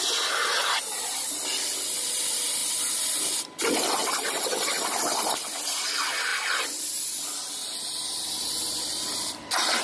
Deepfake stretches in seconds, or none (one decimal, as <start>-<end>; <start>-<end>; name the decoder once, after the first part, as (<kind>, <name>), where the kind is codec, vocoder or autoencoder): none